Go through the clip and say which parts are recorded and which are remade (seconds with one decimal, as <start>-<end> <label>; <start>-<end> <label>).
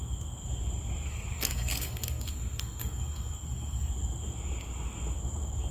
0.0-1.1 recorded; 1.1-3.9 remade; 3.9-5.7 recorded